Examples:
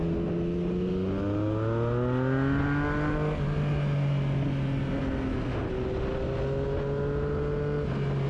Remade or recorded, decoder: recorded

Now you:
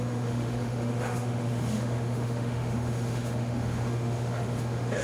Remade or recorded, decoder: remade, autoencoder, DAC-VAE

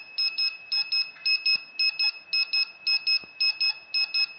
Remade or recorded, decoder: recorded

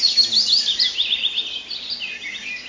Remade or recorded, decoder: recorded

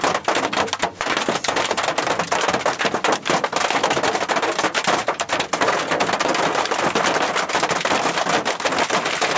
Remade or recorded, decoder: recorded